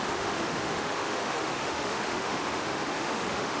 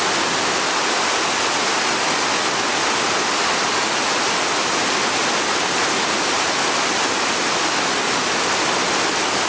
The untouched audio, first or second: second